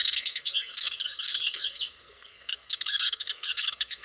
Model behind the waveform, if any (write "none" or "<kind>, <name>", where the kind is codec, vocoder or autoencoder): codec, SNAC